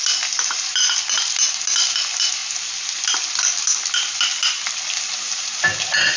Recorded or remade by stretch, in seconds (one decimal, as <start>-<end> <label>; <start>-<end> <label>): 0.0-6.2 recorded